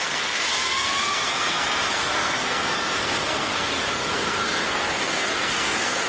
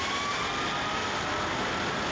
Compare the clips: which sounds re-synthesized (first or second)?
first